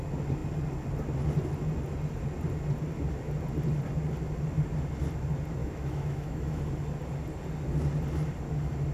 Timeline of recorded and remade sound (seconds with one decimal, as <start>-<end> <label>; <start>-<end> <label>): 0.0-5.6 recorded; 5.6-6.6 remade; 6.6-8.9 recorded